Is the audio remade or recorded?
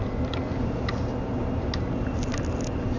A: recorded